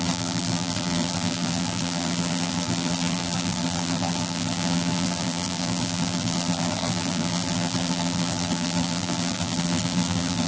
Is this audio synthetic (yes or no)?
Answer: yes